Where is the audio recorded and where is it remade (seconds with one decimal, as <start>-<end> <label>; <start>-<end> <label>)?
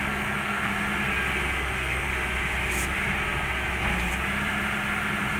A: 0.0-0.7 remade; 0.7-1.6 recorded; 1.6-2.1 remade; 2.1-5.4 recorded